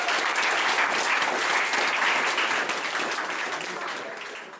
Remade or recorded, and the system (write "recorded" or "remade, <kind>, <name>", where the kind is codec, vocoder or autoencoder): recorded